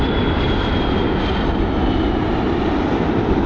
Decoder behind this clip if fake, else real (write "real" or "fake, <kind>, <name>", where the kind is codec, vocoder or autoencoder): real